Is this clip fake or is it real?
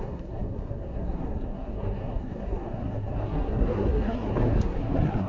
fake